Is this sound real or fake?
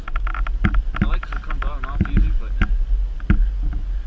real